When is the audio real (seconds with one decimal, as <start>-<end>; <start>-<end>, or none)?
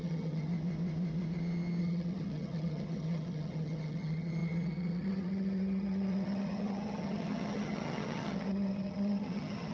0.5-1.8